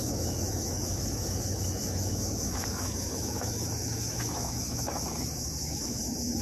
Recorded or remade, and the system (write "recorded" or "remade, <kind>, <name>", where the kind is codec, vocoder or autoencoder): remade, autoencoder, DAC-VAE